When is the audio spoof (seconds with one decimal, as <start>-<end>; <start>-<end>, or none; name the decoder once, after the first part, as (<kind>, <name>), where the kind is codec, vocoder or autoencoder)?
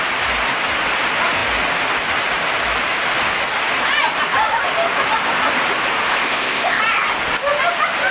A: 6.1-6.8 (codec, ZipCodec)